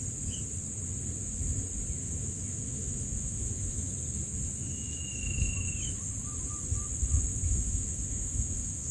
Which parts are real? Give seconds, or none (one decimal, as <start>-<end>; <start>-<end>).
0.0-2.0; 3.9-4.5; 5.9-7.3

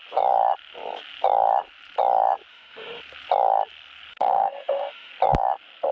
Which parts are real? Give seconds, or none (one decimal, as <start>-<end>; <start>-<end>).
0.0-2.5; 3.0-4.1; 5.1-5.9